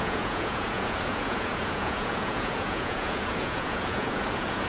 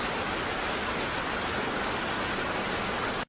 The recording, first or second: second